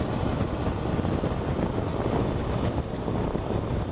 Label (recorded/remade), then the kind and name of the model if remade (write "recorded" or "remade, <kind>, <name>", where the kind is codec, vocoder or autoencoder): recorded